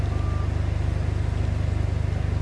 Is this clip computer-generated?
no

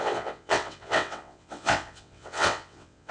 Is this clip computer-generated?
yes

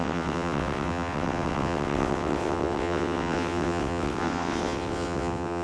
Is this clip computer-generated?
yes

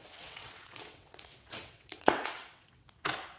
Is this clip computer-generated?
yes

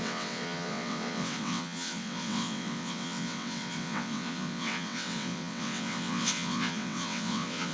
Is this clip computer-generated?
yes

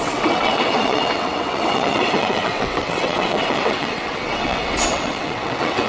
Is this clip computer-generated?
yes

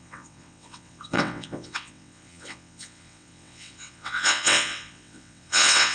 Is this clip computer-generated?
yes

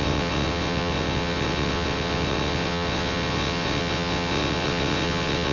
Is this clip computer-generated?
yes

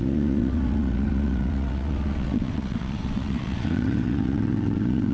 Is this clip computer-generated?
yes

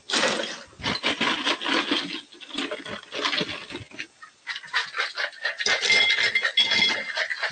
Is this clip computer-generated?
no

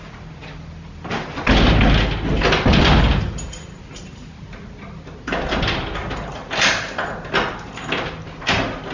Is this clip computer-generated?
no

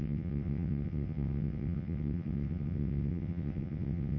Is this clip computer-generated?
yes